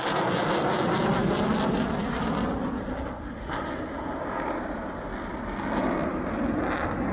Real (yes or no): yes